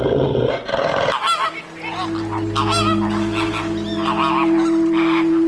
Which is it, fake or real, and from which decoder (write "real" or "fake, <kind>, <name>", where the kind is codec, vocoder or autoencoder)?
real